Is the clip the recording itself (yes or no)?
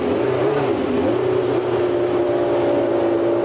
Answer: yes